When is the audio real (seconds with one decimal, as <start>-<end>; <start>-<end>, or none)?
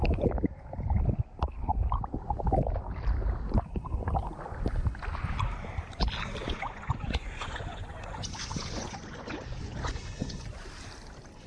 0.0-6.4; 10.7-11.5